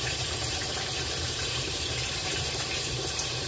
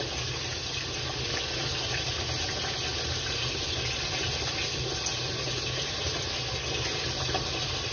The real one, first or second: second